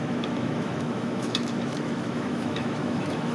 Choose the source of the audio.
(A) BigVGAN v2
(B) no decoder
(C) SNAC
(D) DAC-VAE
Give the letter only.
D